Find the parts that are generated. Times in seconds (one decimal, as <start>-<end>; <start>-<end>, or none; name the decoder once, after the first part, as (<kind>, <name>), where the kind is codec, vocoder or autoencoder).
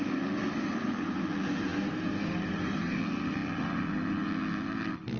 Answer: 1.7-3.0 (vocoder, BigVGAN v2)